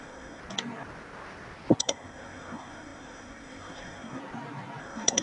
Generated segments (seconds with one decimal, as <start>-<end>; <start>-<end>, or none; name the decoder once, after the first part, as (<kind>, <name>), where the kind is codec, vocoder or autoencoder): 0.0-0.4 (codec, SNAC); 1.8-4.2; 4.8-5.2